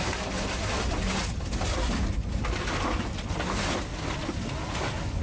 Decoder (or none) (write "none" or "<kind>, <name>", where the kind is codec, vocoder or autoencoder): none